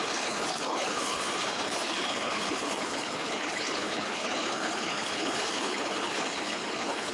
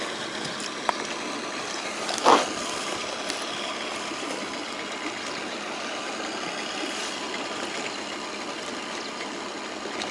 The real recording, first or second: second